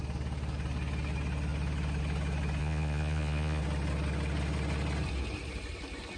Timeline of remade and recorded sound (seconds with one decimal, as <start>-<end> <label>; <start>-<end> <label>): 0.0-2.6 recorded; 2.6-3.6 remade; 3.6-6.2 recorded